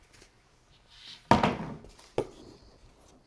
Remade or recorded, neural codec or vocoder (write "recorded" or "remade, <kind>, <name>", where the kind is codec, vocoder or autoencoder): recorded